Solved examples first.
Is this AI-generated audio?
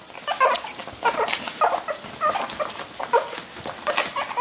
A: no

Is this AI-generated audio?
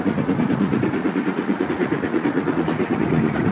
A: yes